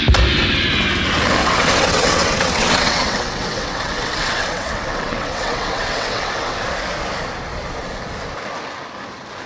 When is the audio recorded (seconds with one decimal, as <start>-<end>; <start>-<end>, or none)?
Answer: 0.0-1.4; 6.6-9.5